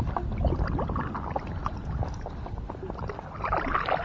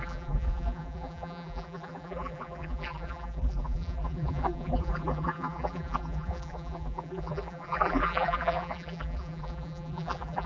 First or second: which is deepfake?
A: second